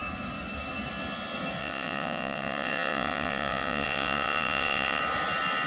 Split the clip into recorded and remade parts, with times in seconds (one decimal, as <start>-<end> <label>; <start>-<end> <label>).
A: 0.0-1.6 recorded; 1.6-5.0 remade; 5.0-5.7 recorded